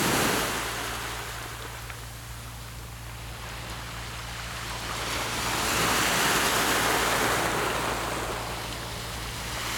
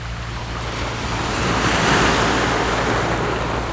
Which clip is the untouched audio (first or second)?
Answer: first